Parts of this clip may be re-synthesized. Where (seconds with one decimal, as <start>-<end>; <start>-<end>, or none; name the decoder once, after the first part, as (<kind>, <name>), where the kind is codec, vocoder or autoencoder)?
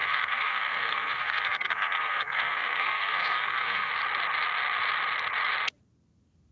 0.0-3.9 (codec, SNAC)